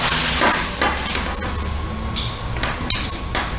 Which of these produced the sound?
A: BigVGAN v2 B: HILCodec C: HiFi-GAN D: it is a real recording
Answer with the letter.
D